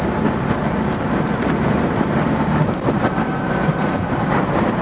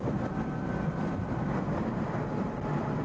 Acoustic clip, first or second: second